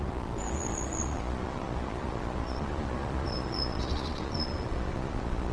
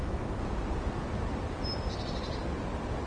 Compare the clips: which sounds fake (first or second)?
first